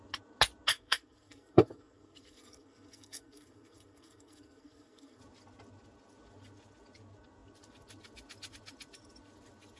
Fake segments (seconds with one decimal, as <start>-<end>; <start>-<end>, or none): 0.7-5.2